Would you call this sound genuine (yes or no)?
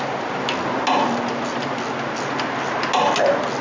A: yes